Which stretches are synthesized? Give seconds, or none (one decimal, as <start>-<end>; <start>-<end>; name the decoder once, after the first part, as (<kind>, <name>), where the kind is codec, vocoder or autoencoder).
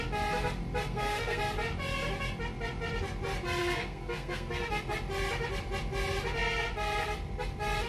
0.8-1.4 (codec, SNAC); 3.6-4.8